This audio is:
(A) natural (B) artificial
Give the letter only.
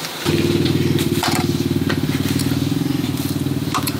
B